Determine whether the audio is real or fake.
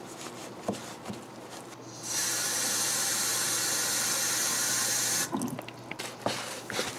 real